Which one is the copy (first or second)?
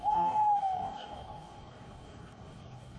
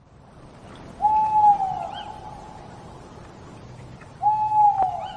first